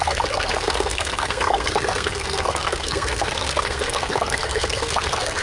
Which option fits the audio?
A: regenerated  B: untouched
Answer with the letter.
A